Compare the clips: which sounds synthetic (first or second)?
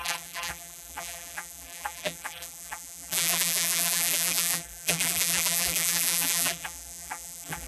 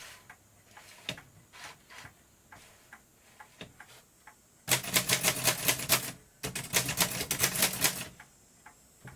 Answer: first